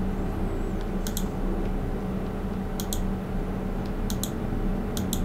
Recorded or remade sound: recorded